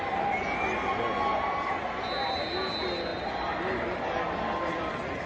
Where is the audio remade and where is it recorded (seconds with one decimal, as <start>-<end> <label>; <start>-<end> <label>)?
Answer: 0.0-5.3 recorded